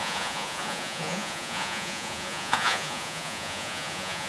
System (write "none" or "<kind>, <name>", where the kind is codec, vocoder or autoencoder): vocoder, Vocos